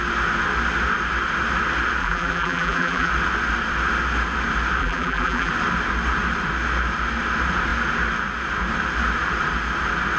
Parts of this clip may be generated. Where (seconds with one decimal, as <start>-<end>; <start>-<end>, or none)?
2.0-3.1; 4.8-5.5